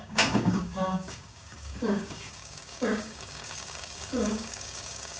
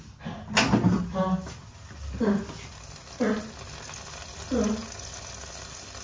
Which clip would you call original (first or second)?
second